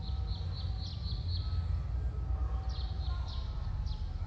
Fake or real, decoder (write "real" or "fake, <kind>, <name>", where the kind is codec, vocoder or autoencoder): real